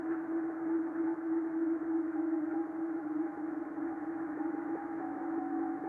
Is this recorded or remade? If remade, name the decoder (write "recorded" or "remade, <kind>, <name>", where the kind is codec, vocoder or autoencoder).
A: remade, autoencoder, DAC-VAE